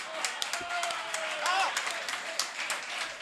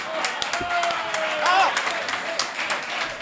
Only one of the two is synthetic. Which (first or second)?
first